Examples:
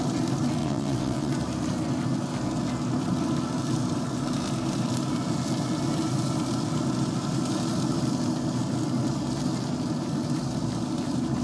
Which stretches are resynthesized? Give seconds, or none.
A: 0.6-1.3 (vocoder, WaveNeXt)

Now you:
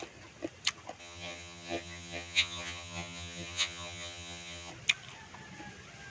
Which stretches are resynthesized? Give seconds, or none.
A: 1.0-4.7 (vocoder, HiFi-GAN)